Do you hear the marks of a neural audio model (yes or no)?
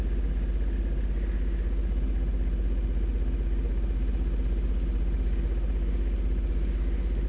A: no